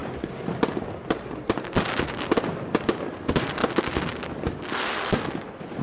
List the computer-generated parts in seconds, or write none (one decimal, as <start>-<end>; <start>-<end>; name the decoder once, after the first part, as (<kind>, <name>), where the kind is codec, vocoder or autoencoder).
none